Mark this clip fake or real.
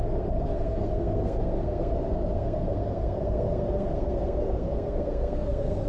fake